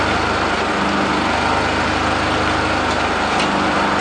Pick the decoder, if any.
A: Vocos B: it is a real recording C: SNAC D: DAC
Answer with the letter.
B